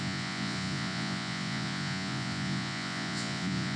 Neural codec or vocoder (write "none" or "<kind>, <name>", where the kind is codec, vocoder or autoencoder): vocoder, Vocos